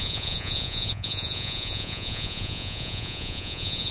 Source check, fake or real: fake